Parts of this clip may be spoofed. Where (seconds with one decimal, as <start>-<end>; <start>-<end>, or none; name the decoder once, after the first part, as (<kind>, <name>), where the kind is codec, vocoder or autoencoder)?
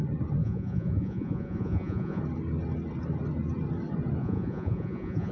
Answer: 0.4-2.2 (vocoder, Vocos); 4.2-5.3